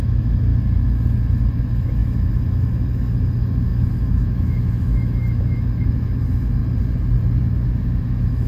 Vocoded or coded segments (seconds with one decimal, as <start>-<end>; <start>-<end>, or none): 0.0-0.5; 1.6-6.6; 7.4-8.5